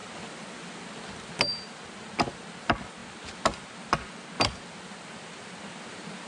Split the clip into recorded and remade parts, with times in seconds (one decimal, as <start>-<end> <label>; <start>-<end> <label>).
0.0-6.3 recorded